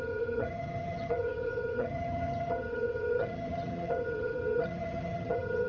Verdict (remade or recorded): remade